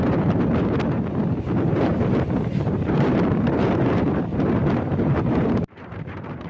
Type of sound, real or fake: fake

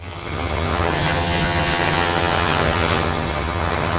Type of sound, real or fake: fake